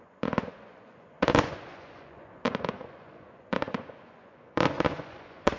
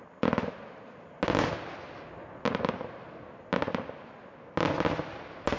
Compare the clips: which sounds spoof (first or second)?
first